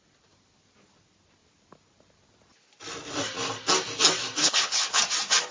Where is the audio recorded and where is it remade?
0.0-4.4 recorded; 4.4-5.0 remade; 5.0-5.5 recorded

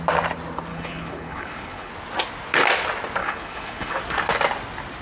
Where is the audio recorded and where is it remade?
0.0-0.7 recorded; 0.7-1.9 remade; 1.9-3.2 recorded; 3.2-4.0 remade; 4.0-5.0 recorded

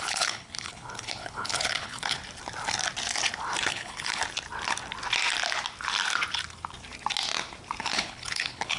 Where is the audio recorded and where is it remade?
0.0-2.2 remade; 2.2-3.7 recorded; 3.7-4.2 remade; 4.2-7.8 recorded; 7.8-8.8 remade

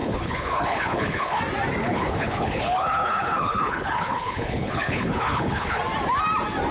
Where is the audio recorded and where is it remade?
0.0-1.4 remade; 1.4-1.8 recorded; 1.8-5.8 remade; 5.8-6.7 recorded

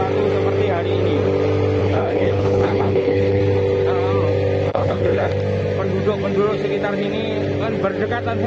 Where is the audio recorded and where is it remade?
0.0-1.8 recorded; 1.8-3.4 remade; 3.4-4.7 recorded; 4.7-5.3 remade; 5.3-8.5 recorded